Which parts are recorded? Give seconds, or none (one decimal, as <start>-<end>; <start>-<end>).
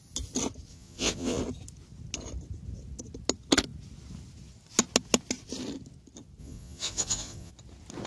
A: 0.0-0.7; 1.4-6.4; 7.5-8.1